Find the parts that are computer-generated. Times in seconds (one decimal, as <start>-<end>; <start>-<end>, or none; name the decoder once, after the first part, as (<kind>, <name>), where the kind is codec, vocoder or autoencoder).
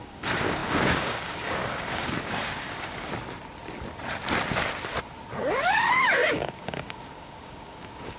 0.0-3.1 (codec, DAC); 5.5-8.2